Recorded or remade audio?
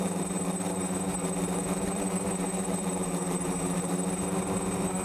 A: remade